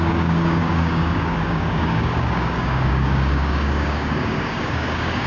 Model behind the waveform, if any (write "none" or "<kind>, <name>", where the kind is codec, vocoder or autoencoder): codec, DAC